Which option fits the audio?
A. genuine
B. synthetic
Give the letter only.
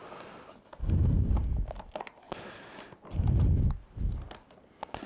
A